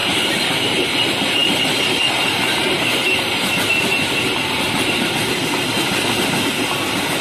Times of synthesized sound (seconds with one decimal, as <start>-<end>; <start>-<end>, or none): none